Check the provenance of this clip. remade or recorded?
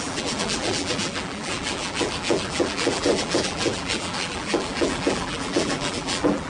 remade